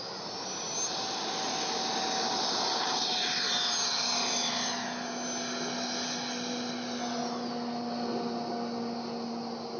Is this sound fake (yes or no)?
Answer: no